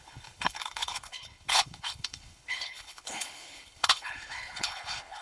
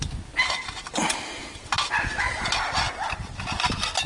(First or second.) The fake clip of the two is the first